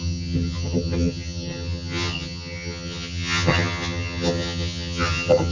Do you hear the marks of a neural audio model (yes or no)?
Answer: yes